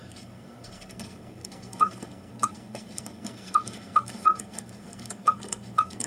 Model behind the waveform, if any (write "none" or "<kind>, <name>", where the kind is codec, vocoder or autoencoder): codec, SNAC